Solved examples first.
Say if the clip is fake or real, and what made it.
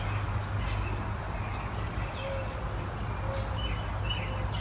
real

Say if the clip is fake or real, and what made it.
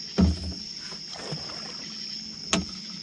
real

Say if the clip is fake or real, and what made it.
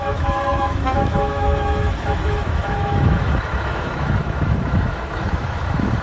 fake, autoencoder, DAC-VAE